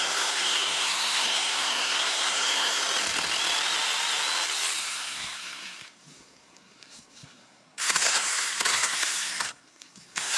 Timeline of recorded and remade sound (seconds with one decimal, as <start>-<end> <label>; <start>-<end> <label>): 0.0-2.8 remade; 2.8-4.8 recorded; 4.8-10.4 remade